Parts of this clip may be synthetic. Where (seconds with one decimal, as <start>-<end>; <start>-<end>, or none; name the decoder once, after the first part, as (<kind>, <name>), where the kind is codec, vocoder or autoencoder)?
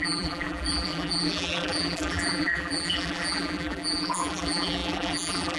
0.0-5.6 (vocoder, BigVGAN v2)